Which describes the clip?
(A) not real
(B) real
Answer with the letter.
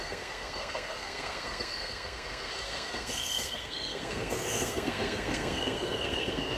A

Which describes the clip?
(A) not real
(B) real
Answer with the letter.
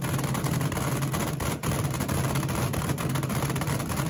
B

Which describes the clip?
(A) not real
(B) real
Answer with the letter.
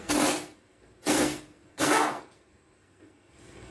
A